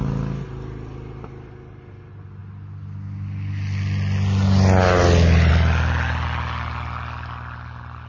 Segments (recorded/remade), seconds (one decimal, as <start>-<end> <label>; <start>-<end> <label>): 0.0-8.1 recorded